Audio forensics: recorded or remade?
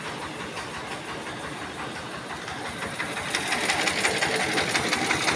recorded